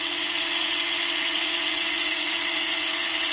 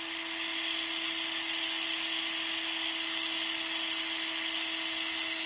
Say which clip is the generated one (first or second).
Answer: first